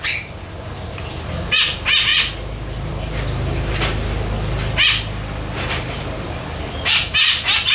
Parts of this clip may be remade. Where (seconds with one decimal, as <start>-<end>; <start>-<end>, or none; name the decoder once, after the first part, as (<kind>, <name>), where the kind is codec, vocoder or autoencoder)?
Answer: none